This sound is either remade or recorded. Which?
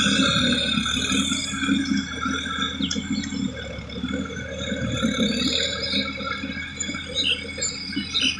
recorded